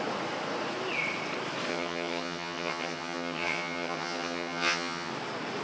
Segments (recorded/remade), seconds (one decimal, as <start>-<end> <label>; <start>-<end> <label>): 0.0-1.7 recorded; 1.7-5.1 remade; 5.1-5.6 recorded